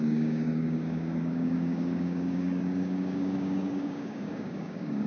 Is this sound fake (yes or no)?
yes